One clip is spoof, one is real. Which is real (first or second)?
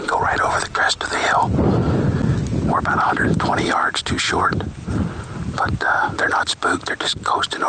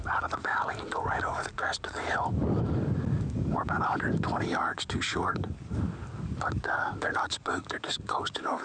first